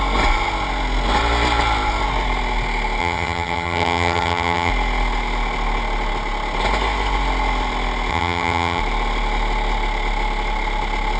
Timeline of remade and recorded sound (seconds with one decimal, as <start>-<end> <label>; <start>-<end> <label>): 0.0-3.0 recorded; 3.0-4.7 remade; 4.7-8.1 recorded; 8.1-8.8 remade; 8.8-11.2 recorded